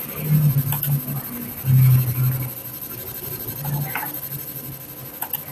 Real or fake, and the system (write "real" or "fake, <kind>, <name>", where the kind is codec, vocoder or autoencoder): real